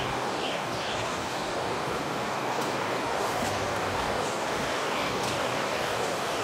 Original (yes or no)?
no